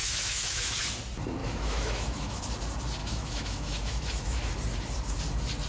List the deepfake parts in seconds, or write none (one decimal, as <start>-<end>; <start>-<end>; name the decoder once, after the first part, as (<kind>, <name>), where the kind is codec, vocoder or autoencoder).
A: 0.0-0.8 (autoencoder, DAC-VAE); 1.4-2.4; 3.0-4.5